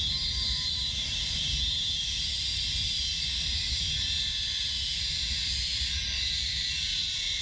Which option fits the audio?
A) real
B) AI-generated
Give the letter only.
A